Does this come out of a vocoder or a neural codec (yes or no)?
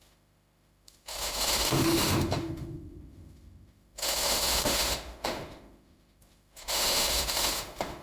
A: yes